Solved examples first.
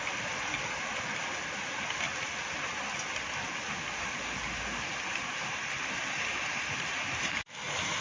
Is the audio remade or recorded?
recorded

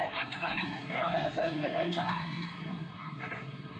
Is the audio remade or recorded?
remade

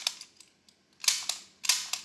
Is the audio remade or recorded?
recorded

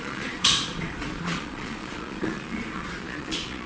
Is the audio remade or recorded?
remade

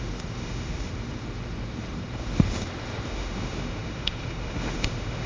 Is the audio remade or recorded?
remade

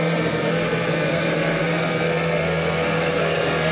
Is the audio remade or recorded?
remade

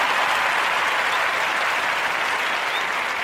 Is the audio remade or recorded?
recorded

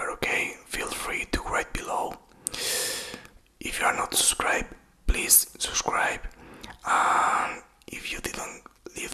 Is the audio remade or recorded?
recorded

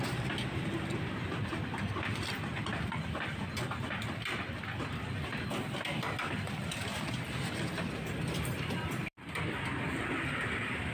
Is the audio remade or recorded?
remade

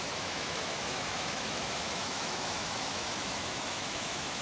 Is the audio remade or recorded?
remade